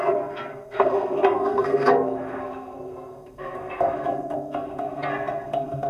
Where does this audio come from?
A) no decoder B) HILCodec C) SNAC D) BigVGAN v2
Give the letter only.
C